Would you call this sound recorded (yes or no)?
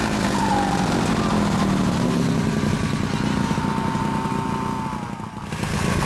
yes